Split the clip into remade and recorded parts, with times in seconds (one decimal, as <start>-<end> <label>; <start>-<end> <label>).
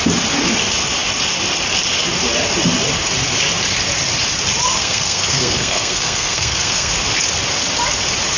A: 0.0-4.8 recorded; 4.8-6.9 remade; 6.9-8.4 recorded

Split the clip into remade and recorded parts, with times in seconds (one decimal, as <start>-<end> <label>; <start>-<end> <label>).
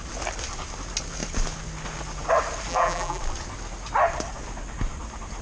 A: 0.0-2.7 recorded; 2.7-3.2 remade; 3.2-5.4 recorded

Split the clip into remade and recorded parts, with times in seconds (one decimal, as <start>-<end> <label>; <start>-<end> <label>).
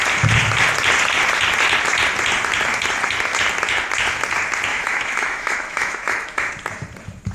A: 0.0-4.7 recorded; 4.7-6.5 remade; 6.5-7.3 recorded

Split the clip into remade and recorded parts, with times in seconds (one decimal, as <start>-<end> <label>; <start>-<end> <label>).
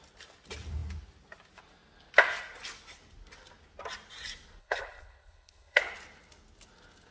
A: 0.0-4.6 recorded; 4.6-5.8 remade; 5.8-7.1 recorded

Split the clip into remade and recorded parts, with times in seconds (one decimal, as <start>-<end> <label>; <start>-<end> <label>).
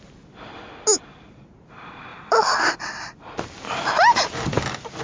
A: 0.0-2.1 recorded; 2.1-5.0 remade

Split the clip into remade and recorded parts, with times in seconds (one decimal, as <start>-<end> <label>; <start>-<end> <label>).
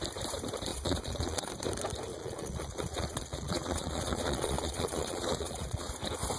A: 0.0-0.7 recorded; 0.7-1.5 remade; 1.5-2.1 recorded; 2.1-5.9 remade; 5.9-6.4 recorded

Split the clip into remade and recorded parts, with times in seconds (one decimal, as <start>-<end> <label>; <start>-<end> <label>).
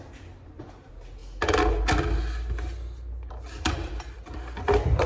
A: 0.0-1.2 remade; 1.2-3.3 recorded; 3.3-3.9 remade; 3.9-5.1 recorded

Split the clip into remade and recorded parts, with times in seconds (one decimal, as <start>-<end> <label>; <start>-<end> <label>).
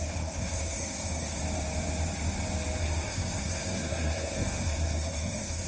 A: 0.0-1.4 remade; 1.4-2.8 recorded; 2.8-5.7 remade